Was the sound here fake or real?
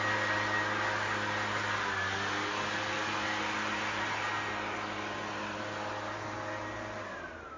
real